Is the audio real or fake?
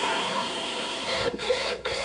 fake